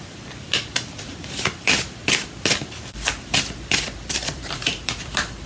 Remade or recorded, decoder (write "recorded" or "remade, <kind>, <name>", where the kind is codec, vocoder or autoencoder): remade, vocoder, BigVGAN v2